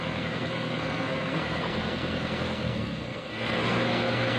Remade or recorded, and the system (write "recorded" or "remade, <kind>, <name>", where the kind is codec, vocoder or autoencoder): remade, codec, SNAC